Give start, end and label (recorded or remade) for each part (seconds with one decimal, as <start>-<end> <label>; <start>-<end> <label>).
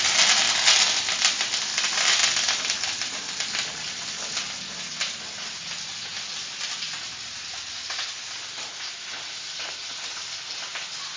0.0-11.2 recorded